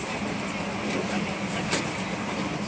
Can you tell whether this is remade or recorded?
recorded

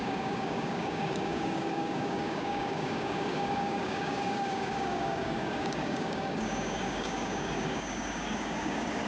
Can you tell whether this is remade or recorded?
remade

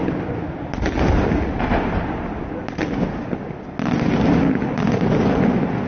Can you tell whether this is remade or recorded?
recorded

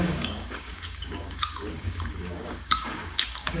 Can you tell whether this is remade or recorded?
remade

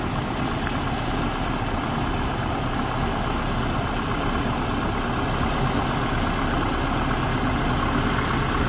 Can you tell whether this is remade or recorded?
recorded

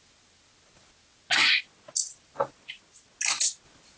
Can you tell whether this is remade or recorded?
recorded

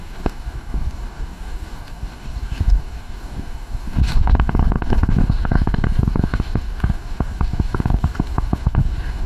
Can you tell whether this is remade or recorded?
remade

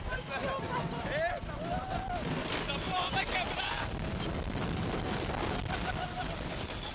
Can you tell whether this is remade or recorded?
recorded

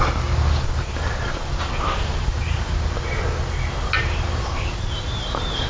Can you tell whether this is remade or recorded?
recorded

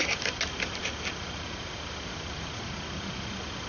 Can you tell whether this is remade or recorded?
recorded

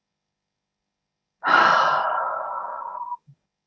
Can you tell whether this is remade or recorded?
remade